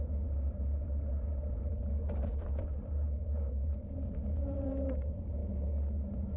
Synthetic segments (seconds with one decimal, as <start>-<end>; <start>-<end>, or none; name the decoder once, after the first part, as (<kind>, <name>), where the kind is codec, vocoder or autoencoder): 0.0-5.4 (vocoder, BigVGAN v2)